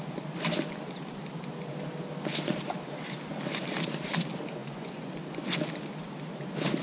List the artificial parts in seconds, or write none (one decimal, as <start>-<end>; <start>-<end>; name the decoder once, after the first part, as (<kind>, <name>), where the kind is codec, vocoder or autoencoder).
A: 4.6-5.1 (vocoder, Vocos)